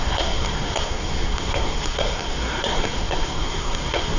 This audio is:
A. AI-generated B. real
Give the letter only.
A